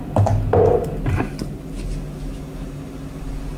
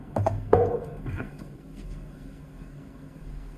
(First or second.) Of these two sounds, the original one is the first